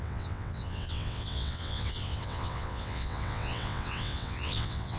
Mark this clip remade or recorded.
remade